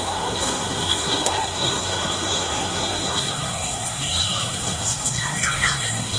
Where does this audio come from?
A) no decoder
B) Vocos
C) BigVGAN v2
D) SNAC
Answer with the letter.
D